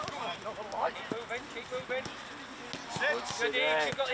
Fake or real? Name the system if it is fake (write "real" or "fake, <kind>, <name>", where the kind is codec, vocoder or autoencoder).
real